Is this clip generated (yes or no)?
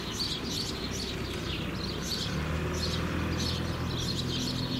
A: no